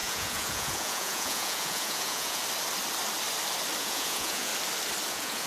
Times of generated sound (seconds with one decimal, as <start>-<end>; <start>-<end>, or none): 0.0-2.4; 3.8-4.5; 5.1-5.5